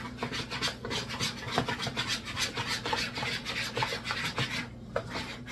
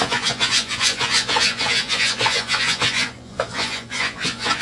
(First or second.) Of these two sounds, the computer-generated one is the second